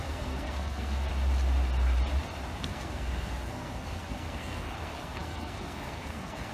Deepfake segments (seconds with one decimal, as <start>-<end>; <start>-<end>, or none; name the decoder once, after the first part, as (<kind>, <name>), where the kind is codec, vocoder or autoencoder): 0.0-1.1 (codec, SNAC); 2.6-6.5